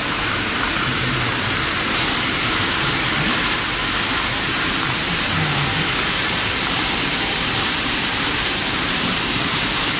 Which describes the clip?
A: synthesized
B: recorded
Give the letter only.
A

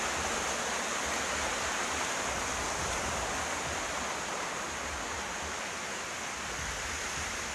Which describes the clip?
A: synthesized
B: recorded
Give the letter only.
B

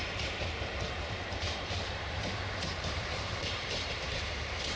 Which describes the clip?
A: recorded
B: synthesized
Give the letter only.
B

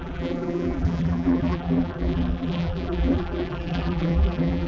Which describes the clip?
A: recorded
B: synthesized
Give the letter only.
B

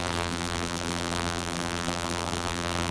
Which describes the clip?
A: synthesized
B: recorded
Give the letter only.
A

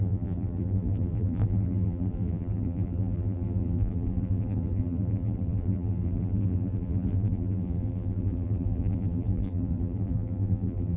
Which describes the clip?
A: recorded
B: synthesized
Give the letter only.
B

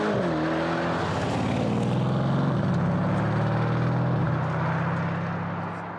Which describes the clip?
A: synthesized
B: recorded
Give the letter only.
B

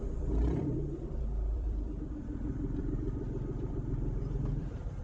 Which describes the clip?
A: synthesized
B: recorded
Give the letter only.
A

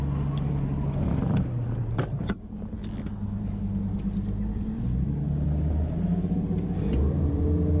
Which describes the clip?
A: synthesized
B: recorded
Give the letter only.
B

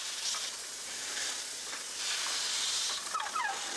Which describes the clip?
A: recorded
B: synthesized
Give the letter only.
A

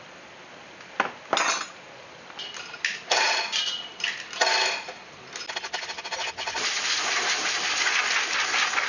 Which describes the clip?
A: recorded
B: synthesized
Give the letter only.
A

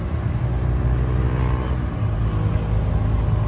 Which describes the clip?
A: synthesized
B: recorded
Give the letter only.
B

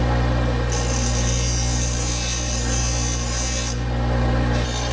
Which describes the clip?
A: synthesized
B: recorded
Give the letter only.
B